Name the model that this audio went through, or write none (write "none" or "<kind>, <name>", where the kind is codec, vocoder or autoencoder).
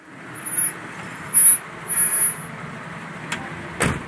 none